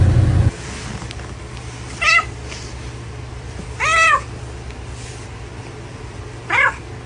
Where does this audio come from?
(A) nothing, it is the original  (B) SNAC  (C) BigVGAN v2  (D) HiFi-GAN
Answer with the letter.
A